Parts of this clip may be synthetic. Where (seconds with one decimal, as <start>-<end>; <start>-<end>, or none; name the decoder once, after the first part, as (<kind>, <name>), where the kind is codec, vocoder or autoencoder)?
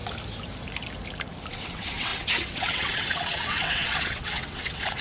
1.5-5.0 (vocoder, WaveNeXt)